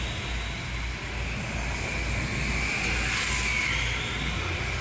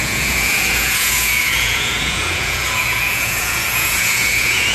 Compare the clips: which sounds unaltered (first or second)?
first